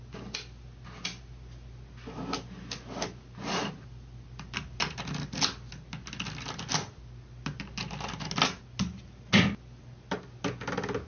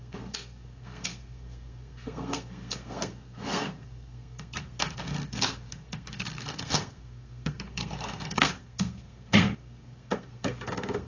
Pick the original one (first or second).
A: first